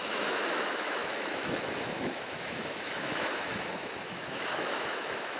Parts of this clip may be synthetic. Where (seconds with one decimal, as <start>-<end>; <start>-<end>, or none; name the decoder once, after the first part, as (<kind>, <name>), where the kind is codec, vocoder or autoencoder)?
0.0-5.4 (autoencoder, DAC-VAE)